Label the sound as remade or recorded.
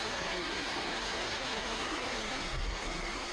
remade